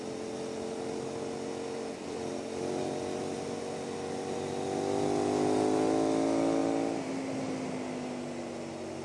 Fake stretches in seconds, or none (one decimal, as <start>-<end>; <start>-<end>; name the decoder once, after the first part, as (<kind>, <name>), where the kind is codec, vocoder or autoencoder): none